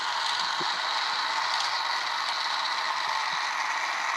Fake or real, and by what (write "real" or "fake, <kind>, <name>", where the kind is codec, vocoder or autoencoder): real